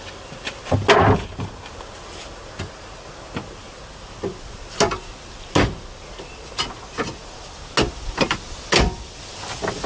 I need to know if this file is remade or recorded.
recorded